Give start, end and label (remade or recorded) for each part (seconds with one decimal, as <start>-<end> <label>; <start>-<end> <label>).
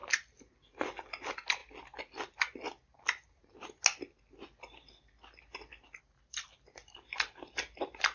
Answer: 0.0-8.1 recorded